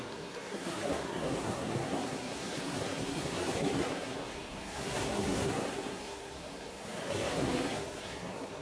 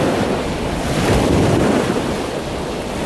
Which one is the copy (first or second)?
first